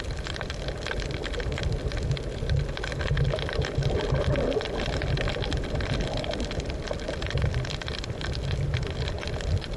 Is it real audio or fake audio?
real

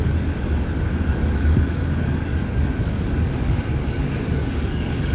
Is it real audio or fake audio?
fake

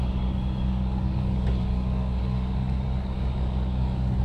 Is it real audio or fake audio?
fake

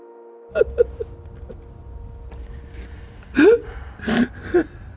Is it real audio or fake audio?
real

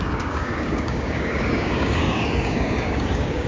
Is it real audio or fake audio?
fake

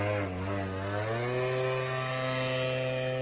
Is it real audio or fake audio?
real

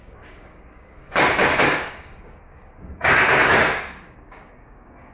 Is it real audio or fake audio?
fake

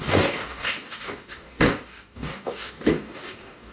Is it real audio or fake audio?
fake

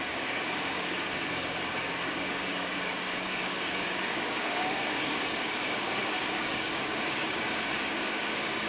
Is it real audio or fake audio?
fake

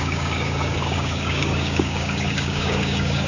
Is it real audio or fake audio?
fake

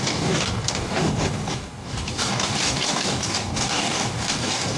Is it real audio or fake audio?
fake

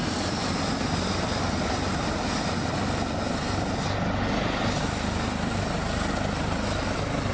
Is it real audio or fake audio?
real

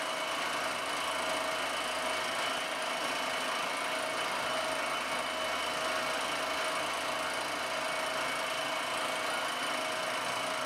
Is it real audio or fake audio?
real